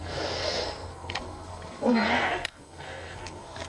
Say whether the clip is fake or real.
fake